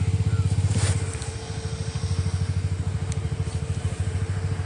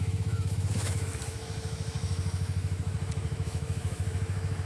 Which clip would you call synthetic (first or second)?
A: second